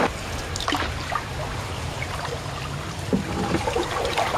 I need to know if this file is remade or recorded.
recorded